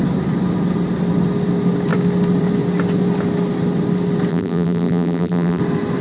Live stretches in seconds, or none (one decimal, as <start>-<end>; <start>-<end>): 0.0-4.3; 5.6-6.0